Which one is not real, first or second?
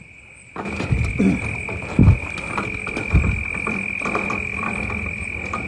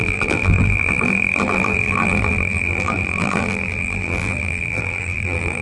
second